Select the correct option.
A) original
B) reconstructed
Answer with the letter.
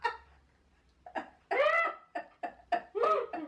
A